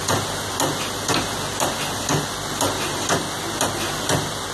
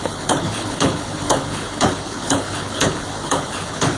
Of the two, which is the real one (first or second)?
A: first